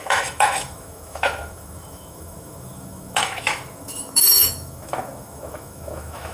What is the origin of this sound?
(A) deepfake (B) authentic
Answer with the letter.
A